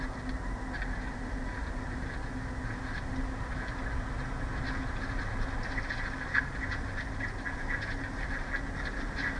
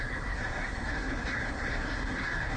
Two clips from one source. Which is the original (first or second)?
first